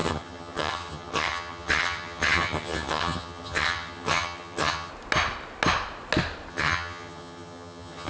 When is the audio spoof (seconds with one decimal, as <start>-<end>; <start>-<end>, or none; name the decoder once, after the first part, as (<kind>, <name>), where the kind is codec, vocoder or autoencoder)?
0.0-4.9 (vocoder, HiFi-GAN); 6.5-8.1